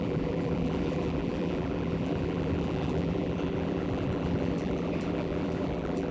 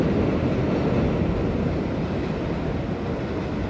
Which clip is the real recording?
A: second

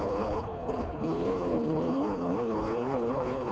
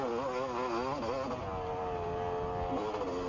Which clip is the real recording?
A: second